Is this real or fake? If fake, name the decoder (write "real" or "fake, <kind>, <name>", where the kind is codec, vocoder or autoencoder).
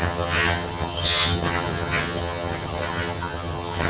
fake, vocoder, HiFi-GAN